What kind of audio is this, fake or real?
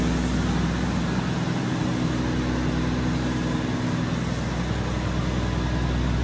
real